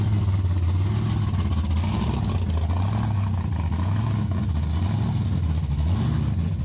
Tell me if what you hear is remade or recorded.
recorded